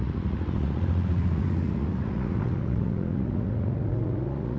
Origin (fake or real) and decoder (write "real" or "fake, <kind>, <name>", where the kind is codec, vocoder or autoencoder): fake, vocoder, Vocos